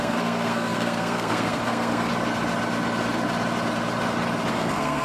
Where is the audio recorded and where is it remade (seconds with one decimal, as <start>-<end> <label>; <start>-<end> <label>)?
0.0-2.1 remade; 2.1-4.5 recorded; 4.5-5.0 remade